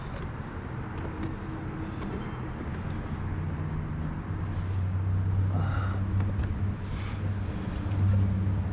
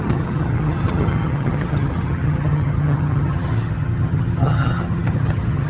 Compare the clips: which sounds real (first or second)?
first